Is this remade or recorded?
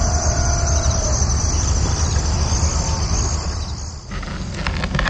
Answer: recorded